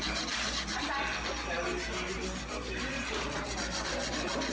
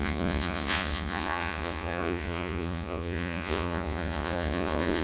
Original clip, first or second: first